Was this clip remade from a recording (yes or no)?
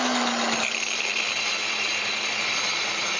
no